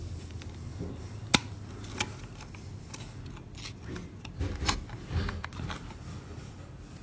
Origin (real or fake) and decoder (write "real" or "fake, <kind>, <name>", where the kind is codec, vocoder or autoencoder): real